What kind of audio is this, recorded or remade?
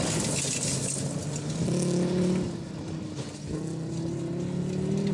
recorded